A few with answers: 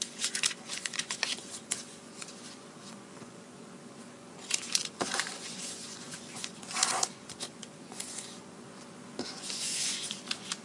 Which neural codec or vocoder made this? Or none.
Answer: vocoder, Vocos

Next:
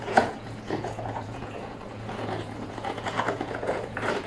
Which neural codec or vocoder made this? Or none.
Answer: vocoder, Vocos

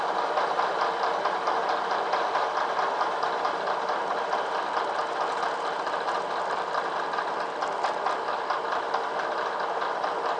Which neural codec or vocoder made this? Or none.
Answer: none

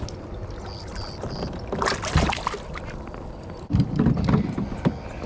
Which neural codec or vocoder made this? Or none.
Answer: none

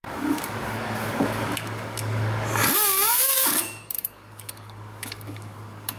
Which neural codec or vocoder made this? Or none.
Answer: codec, DAC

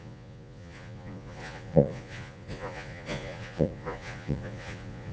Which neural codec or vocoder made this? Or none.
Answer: vocoder, Vocos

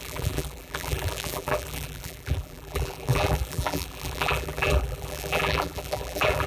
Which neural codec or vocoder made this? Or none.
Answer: vocoder, BigVGAN v2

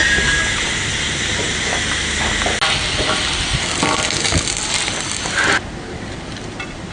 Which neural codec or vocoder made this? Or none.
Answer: none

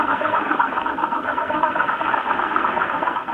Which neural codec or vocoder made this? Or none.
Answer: codec, SNAC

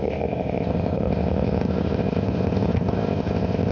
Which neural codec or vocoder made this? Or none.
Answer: codec, ZipCodec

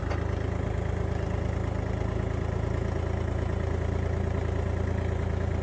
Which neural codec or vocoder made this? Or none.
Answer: none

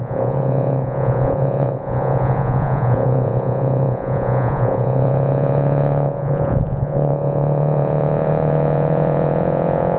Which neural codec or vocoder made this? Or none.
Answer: vocoder, Vocos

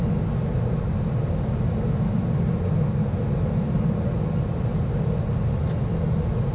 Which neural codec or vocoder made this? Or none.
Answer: none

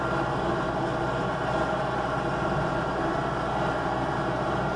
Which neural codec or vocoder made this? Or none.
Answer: none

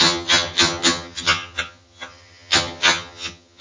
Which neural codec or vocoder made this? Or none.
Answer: vocoder, HiFi-GAN